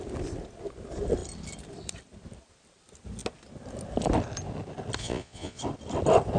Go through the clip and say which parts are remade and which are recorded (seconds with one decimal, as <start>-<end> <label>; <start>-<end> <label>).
0.0-5.0 recorded; 5.0-5.6 remade; 5.6-6.4 recorded